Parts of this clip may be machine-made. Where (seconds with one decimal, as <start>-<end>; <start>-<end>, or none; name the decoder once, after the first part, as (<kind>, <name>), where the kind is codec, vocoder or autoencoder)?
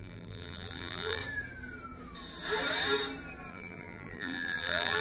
0.0-1.2 (vocoder, BigVGAN v2); 3.5-5.0